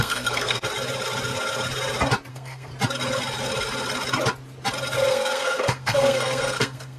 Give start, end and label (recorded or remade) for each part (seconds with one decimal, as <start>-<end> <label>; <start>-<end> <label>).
0.0-0.6 remade; 0.6-2.3 recorded; 2.3-2.7 remade; 2.7-5.1 recorded; 5.1-7.0 remade